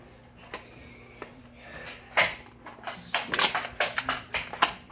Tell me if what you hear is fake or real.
real